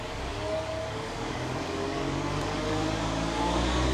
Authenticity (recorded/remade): remade